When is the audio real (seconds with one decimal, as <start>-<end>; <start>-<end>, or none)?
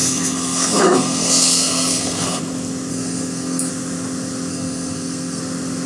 2.4-2.9; 3.7-4.5; 5.4-5.9